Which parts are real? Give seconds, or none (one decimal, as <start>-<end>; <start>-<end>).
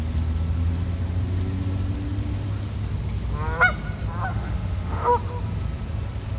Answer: 0.0-4.3; 5.1-6.4